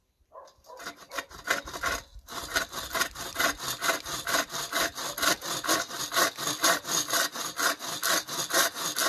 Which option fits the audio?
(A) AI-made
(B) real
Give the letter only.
B